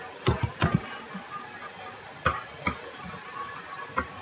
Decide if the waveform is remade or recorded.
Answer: recorded